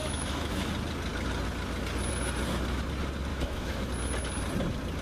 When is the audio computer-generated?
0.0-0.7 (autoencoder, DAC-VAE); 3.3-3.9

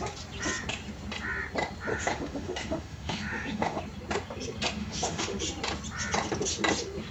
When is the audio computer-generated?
1.9-3.8 (autoencoder, DAC-VAE); 4.8-5.4

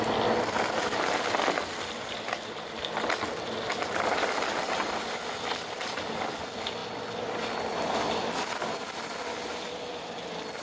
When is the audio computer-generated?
none

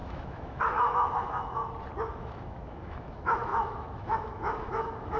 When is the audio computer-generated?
0.0-1.6 (autoencoder, DAC-VAE); 2.1-5.2

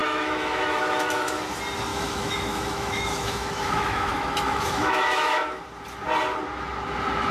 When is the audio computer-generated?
0.0-1.4 (autoencoder, DAC-VAE); 1.9-5.6

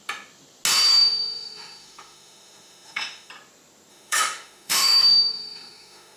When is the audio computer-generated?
0.9-3.3 (autoencoder, DAC-VAE); 3.9-6.2